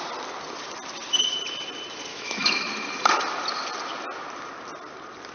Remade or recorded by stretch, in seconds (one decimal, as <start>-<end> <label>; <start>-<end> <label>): 0.0-2.1 recorded; 2.1-2.9 remade; 2.9-5.3 recorded